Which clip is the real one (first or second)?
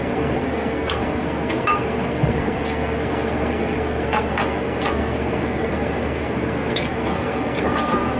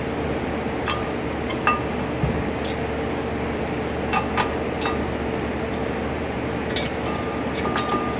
second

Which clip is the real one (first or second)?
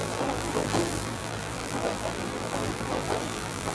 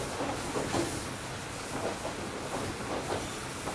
second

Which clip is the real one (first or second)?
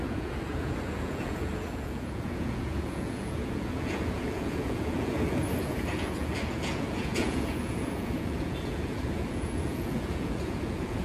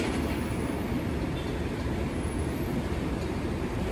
second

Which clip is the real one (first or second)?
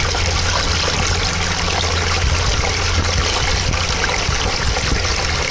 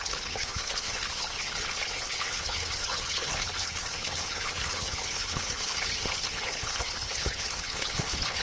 first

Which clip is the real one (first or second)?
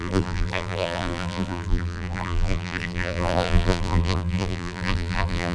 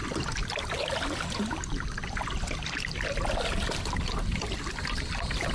second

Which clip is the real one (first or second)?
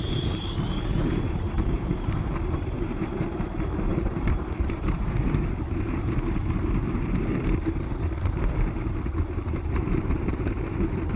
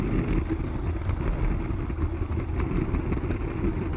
second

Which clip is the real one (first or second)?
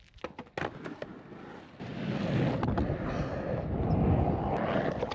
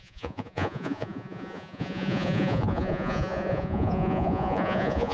first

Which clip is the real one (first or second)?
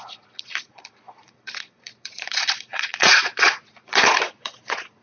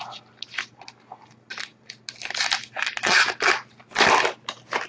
second